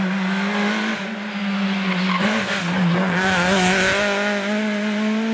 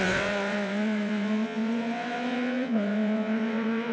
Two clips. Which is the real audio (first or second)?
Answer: first